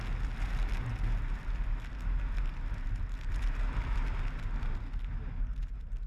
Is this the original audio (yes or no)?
yes